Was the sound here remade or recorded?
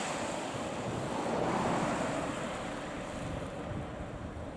recorded